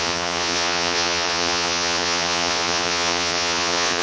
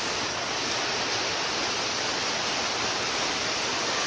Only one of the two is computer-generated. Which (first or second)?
first